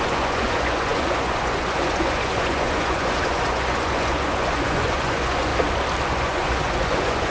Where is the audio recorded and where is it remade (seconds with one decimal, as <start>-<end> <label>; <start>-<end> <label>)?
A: 0.0-5.5 remade; 5.5-6.1 recorded; 6.1-7.3 remade